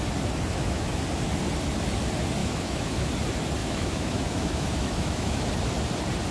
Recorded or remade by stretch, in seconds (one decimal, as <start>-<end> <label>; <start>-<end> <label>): 0.0-0.5 recorded; 0.5-1.0 remade; 1.0-2.4 recorded; 2.4-3.1 remade; 3.1-3.6 recorded; 3.6-5.4 remade; 5.4-6.3 recorded